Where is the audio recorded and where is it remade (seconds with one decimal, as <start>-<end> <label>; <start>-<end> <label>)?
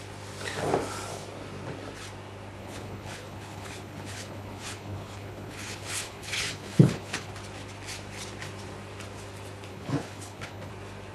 0.0-2.6 recorded; 2.6-7.3 remade; 7.3-9.7 recorded; 9.7-10.7 remade; 10.7-11.1 recorded